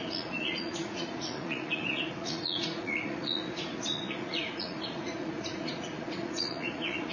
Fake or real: fake